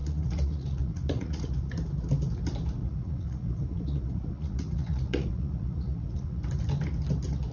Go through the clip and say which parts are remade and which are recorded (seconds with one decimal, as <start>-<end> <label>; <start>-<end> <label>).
0.0-1.7 remade; 1.7-2.8 recorded; 2.8-6.4 remade; 6.4-7.5 recorded